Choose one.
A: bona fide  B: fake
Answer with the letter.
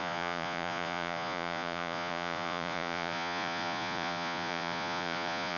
B